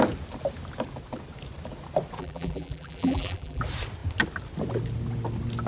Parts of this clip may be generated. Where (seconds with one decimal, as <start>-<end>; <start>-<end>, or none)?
2.2-3.6